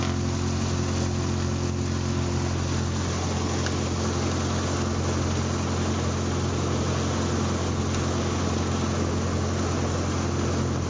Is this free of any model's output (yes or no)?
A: yes